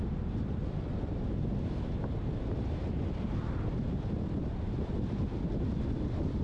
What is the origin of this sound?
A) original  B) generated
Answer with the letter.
A